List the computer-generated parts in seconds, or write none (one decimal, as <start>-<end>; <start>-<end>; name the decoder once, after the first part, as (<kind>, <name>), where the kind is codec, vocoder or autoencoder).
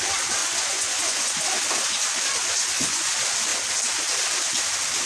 0.4-1.4 (vocoder, Vocos); 2.4-3.1